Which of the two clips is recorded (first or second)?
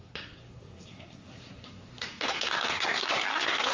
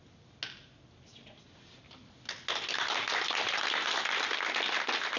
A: second